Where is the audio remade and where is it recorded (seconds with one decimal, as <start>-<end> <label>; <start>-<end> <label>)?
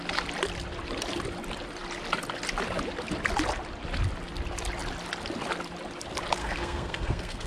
0.0-6.4 recorded; 6.4-7.5 remade